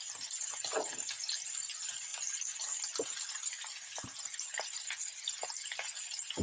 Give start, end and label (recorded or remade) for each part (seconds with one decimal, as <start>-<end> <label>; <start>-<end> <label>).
0.0-4.5 recorded; 4.5-5.3 remade; 5.3-6.4 recorded